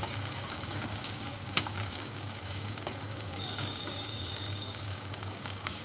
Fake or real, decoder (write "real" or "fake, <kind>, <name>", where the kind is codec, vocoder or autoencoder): fake, codec, DAC